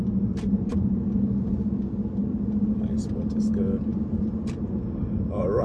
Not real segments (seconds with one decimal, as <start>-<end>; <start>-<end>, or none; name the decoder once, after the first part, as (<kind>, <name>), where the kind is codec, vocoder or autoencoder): none